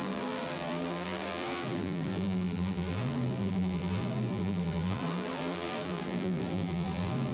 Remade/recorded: remade